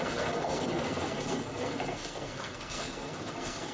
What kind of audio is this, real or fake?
fake